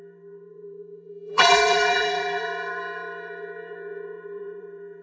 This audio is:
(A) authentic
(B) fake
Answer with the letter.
B